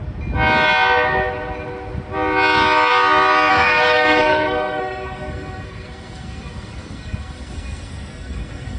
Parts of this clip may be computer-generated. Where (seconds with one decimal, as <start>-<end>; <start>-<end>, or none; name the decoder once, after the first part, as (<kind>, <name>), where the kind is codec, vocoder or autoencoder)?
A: 3.5-8.8 (codec, SNAC)